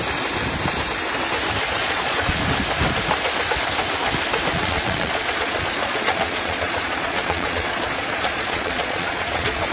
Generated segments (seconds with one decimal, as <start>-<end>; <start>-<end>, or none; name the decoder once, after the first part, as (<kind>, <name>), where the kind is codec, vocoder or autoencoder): 1.8-2.4 (vocoder, Vocos); 4.5-9.7